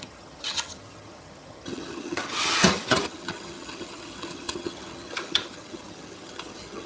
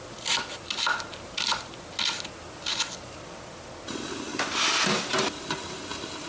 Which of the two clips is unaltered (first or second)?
second